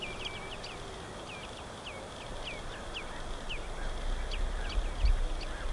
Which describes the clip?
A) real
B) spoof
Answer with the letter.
A